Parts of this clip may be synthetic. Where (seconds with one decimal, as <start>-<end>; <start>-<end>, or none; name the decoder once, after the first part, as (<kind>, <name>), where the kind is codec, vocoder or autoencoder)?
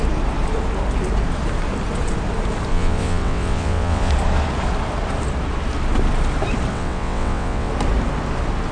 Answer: 2.7-4.1 (vocoder, WaveNeXt); 6.7-7.7